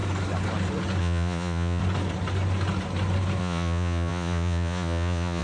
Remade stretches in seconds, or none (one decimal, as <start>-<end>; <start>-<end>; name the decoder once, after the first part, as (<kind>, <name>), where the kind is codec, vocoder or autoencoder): 1.0-1.8 (vocoder, Vocos); 3.4-5.4